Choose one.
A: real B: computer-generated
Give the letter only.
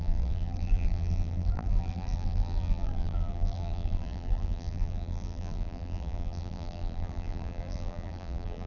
B